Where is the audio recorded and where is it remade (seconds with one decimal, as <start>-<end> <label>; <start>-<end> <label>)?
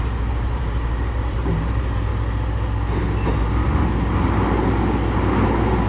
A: 0.0-2.1 remade; 2.1-5.9 recorded